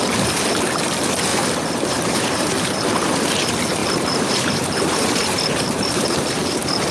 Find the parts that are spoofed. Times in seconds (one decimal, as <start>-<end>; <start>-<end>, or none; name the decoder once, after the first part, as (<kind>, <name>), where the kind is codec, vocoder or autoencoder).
1.3-2.5 (vocoder, BigVGAN v2); 3.8-6.4